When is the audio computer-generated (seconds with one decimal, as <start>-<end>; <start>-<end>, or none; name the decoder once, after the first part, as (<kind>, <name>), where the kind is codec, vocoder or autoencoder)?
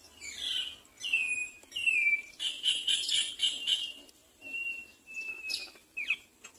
1.4-5.4 (vocoder, BigVGAN v2)